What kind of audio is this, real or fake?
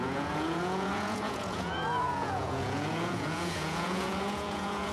fake